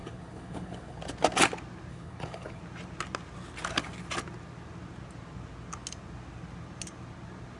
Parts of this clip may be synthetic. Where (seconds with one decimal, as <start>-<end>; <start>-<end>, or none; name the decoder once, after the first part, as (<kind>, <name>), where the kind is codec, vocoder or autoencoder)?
0.0-1.0 (codec, HILCodec); 1.9-2.6